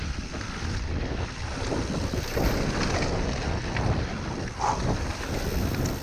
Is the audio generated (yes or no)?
no